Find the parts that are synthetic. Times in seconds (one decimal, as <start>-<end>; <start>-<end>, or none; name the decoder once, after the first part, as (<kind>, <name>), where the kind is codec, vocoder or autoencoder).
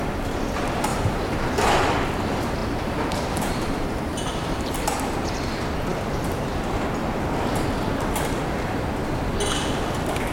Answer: 0.9-1.7 (vocoder, BigVGAN v2); 2.6-5.4